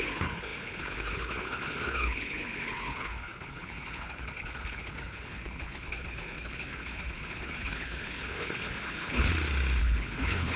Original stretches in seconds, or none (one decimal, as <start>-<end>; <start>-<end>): 9.3-9.8